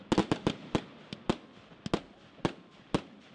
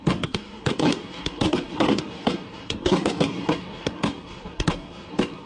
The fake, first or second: second